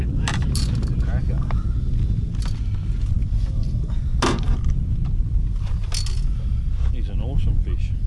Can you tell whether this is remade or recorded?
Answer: recorded